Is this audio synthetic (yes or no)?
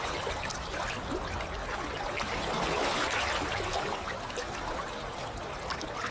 no